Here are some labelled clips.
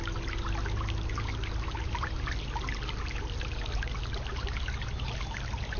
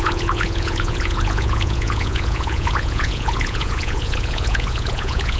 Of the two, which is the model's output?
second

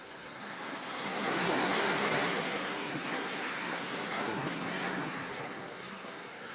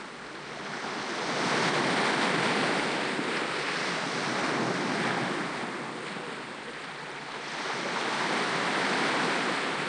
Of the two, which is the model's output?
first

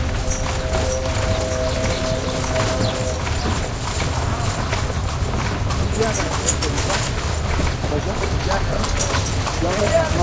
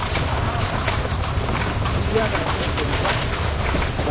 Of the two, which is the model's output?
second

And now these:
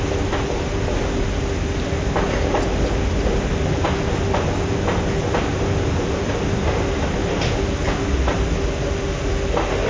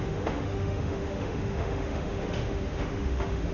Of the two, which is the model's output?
second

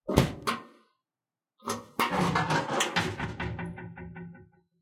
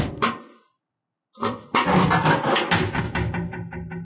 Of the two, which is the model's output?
second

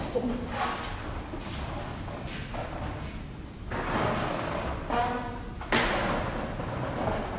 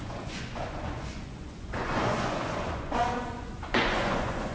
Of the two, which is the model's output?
second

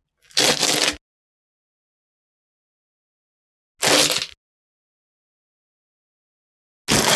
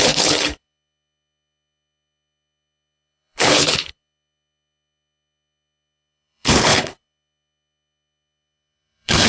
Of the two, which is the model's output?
second